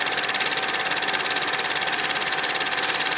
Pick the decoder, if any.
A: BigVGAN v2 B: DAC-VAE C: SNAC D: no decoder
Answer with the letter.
D